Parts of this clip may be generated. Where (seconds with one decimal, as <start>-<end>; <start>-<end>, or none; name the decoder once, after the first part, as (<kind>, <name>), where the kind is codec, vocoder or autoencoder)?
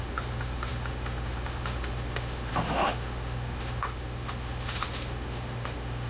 0.0-6.1 (autoencoder, DAC-VAE)